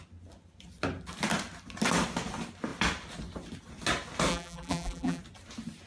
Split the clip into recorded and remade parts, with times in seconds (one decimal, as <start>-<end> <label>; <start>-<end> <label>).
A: 0.0-4.3 recorded; 4.3-5.2 remade; 5.2-5.9 recorded